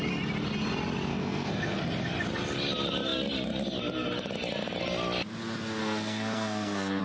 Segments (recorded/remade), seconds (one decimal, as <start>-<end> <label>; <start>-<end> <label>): 0.0-1.1 recorded; 1.1-1.8 remade; 1.8-5.8 recorded; 5.8-7.0 remade